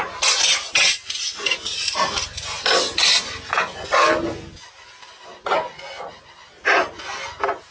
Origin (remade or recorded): recorded